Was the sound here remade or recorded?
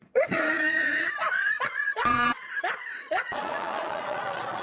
remade